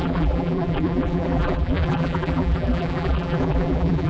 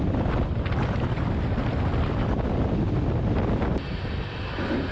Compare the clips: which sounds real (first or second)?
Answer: second